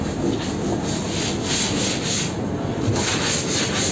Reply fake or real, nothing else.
real